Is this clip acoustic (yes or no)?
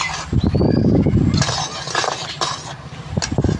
yes